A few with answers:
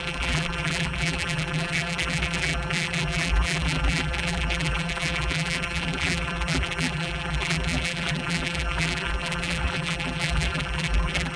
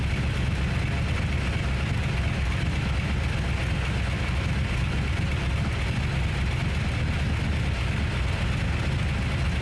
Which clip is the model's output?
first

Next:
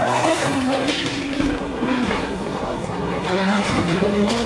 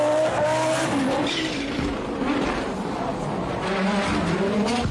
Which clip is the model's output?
first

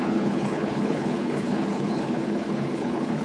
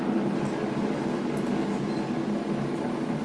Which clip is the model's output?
first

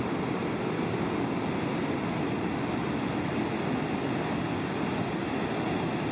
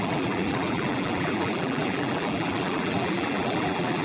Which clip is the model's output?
second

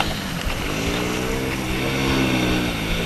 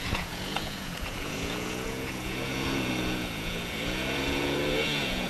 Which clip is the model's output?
second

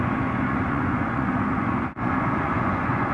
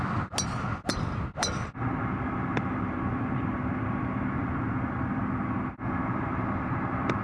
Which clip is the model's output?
first